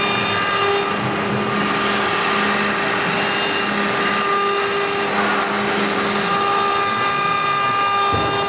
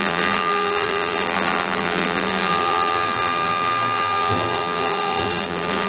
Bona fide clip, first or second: first